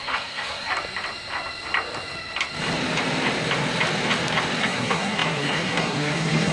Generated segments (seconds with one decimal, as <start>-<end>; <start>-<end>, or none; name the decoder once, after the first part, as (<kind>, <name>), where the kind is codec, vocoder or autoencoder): 0.0-0.7 (codec, SNAC); 4.6-6.5